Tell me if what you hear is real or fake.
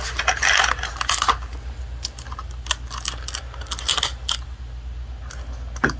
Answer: real